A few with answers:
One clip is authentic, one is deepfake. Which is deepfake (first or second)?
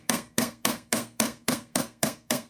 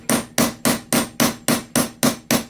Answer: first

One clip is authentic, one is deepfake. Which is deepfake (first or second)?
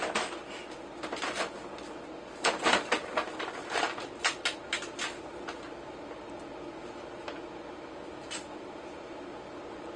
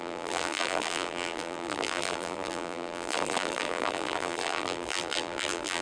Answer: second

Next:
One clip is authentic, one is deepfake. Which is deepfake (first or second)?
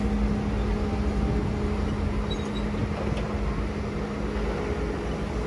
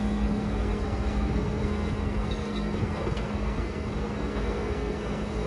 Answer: second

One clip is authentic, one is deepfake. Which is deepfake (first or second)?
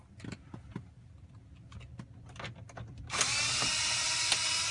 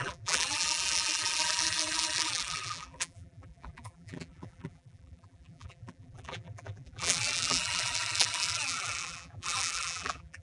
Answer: second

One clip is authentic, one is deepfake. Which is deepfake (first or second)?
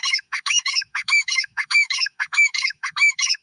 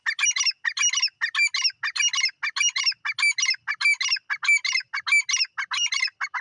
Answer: first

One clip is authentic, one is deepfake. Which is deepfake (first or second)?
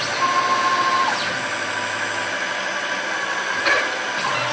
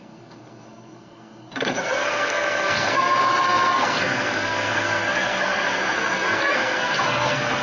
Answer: second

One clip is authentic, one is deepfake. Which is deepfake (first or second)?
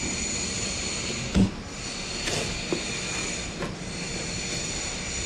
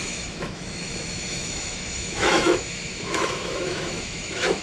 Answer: second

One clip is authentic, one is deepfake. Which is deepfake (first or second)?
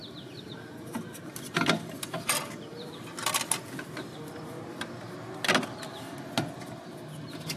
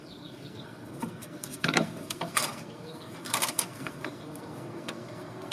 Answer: second